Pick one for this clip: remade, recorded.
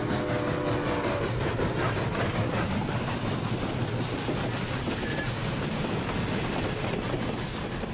recorded